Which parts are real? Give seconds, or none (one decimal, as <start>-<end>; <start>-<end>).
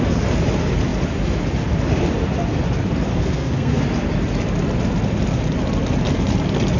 0.0-3.1; 3.8-6.8